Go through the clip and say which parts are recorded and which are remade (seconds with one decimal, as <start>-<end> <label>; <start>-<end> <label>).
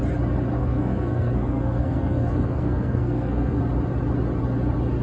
0.0-0.6 recorded; 0.6-3.6 remade; 3.6-5.0 recorded